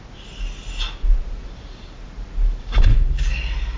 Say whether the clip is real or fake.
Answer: real